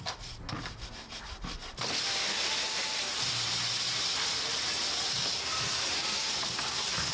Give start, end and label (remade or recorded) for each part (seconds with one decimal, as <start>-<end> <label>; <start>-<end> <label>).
0.0-7.1 recorded